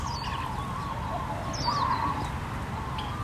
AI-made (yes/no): no